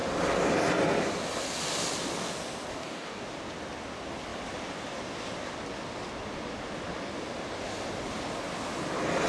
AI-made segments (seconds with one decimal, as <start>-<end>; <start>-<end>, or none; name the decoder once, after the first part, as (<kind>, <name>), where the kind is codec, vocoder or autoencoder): 2.7-3.2 (codec, DAC)